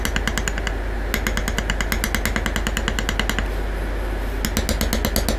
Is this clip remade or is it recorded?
recorded